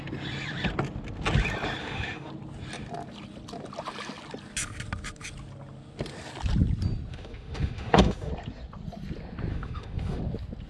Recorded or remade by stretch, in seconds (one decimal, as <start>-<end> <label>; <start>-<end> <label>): 0.0-1.8 recorded; 1.8-2.3 remade; 2.3-7.1 recorded; 7.1-8.3 remade; 8.3-9.5 recorded; 9.5-10.2 remade; 10.2-10.7 recorded